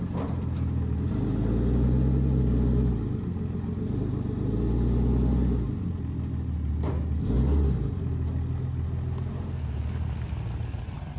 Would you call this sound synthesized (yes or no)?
no